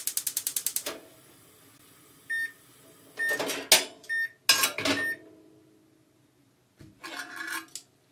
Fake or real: real